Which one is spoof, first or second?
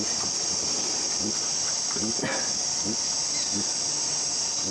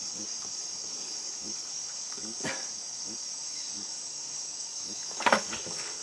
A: second